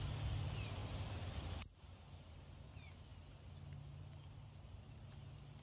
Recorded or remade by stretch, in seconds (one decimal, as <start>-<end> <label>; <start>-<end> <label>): 0.0-5.6 recorded